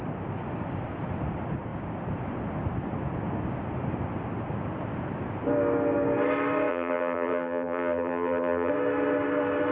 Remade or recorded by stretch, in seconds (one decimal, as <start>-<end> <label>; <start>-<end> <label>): 0.0-6.7 recorded; 6.7-8.7 remade; 8.7-9.7 recorded